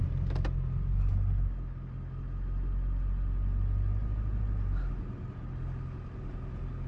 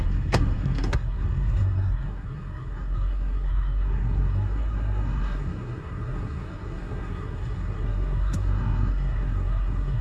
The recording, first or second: first